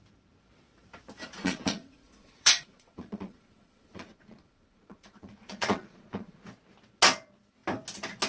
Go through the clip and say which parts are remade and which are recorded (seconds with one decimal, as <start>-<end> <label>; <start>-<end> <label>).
0.0-1.4 recorded; 1.4-6.4 remade; 6.4-8.3 recorded